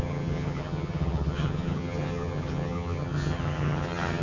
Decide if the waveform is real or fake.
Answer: fake